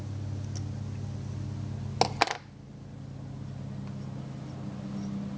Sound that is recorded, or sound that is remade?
recorded